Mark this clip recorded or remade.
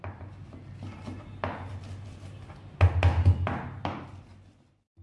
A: recorded